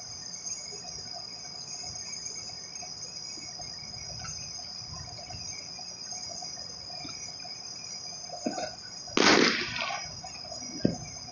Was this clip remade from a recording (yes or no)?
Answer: no